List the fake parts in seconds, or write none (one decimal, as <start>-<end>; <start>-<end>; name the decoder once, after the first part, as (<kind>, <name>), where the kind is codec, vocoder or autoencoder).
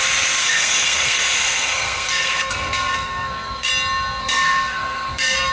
0.4-3.7 (codec, SNAC); 4.2-5.5